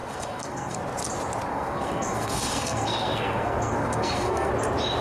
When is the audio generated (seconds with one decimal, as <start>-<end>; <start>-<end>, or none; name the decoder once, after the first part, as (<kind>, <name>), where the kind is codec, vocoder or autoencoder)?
0.0-0.8 (codec, SNAC); 1.5-4.5